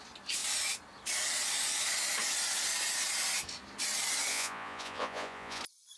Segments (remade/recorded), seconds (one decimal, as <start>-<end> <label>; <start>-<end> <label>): 0.0-4.3 recorded; 4.3-5.6 remade; 5.6-6.0 recorded